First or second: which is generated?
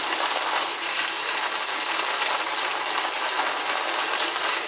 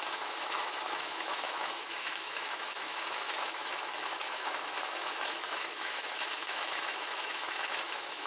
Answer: second